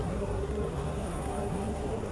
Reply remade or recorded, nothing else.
remade